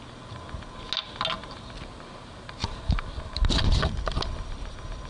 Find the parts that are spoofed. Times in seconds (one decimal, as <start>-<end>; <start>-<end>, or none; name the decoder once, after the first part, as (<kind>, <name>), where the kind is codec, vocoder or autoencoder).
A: 1.4-3.5 (vocoder, BigVGAN v2)

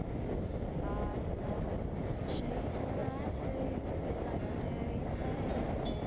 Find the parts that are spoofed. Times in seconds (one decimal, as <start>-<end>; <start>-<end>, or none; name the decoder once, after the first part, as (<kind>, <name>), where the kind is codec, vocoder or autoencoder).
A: none

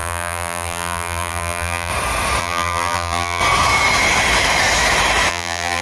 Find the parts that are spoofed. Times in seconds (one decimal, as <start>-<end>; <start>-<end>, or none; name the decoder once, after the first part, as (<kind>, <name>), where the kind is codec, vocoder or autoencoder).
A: 0.0-1.9 (vocoder, BigVGAN v2); 2.4-3.4; 5.3-5.8

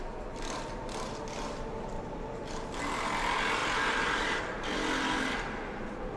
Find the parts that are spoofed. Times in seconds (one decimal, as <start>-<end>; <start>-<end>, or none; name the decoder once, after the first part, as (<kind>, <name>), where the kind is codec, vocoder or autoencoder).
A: 1.7-3.0 (vocoder, BigVGAN v2); 3.6-4.4

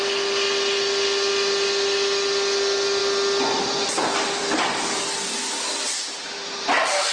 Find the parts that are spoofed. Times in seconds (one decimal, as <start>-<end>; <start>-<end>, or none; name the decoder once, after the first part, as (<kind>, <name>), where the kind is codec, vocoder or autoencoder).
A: none